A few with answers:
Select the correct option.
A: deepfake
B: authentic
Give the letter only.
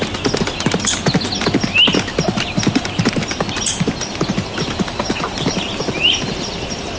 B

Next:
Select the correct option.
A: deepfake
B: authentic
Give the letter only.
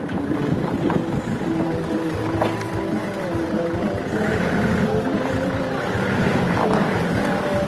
B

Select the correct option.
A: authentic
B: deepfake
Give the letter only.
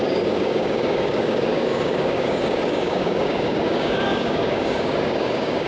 B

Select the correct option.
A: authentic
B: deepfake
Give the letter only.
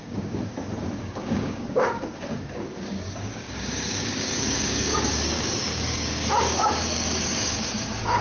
B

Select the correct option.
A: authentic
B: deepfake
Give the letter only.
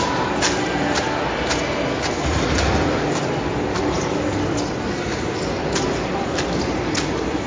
A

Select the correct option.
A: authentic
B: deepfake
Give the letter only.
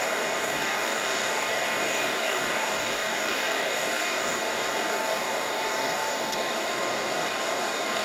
B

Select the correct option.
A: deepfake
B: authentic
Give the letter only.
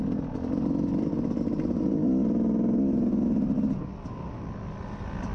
B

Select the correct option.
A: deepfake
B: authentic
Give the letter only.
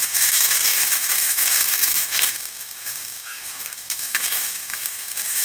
A